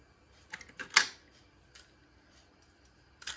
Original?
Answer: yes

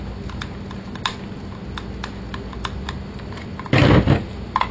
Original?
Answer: yes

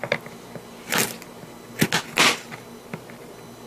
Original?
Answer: yes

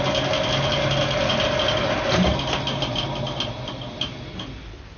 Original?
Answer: yes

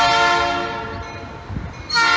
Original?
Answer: yes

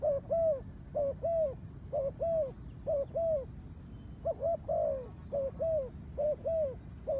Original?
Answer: yes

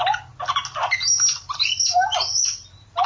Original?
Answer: yes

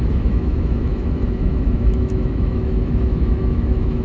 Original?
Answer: no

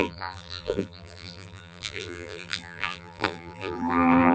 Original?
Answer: no